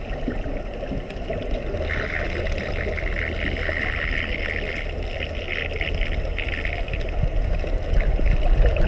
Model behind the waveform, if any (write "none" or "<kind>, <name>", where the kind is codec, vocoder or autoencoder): none